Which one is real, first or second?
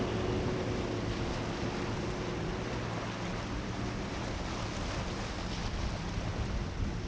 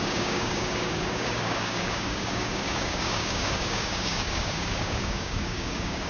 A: first